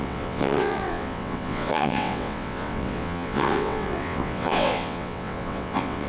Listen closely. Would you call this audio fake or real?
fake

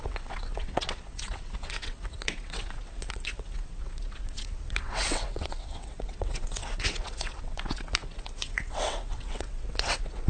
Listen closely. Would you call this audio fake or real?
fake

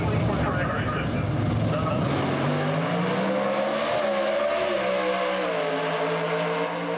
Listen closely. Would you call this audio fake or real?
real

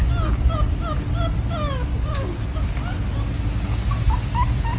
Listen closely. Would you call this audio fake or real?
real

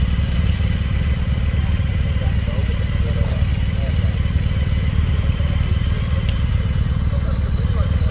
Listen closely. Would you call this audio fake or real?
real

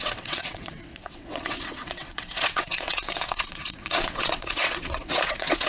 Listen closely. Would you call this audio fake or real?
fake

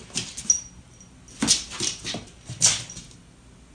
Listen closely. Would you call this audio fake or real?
real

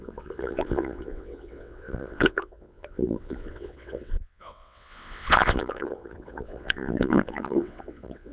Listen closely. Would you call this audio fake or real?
fake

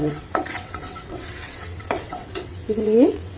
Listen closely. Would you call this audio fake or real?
fake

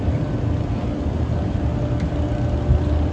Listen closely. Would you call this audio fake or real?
real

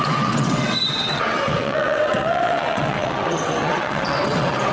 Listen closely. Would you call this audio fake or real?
fake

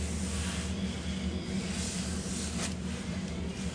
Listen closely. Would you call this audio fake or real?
real